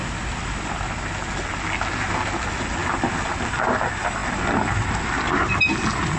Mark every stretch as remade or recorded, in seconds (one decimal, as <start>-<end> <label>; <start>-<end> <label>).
0.0-6.2 recorded